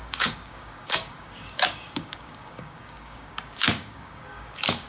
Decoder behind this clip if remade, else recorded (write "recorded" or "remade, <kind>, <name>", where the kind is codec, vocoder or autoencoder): remade, codec, DAC